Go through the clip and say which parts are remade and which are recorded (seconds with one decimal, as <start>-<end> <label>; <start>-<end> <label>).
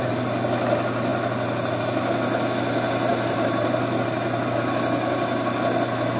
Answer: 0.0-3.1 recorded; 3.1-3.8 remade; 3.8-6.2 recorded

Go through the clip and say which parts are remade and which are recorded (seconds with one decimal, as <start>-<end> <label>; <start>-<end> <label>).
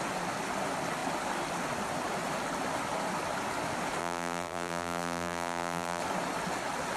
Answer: 0.0-4.0 recorded; 4.0-6.0 remade; 6.0-7.0 recorded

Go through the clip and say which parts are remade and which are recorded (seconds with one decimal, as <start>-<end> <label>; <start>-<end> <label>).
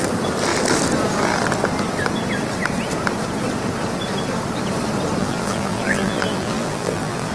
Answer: 0.0-5.2 recorded; 5.2-7.3 remade